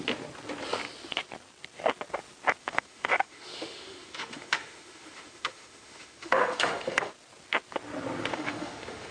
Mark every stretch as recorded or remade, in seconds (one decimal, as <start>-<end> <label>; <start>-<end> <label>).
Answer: 0.0-2.6 recorded; 2.6-7.1 remade; 7.1-8.3 recorded; 8.3-9.1 remade